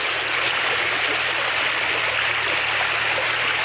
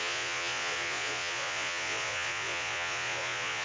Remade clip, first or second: second